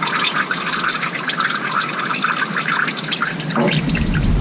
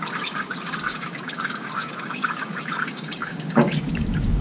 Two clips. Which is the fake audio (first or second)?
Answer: second